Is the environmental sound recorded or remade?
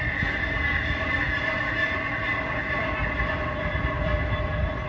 recorded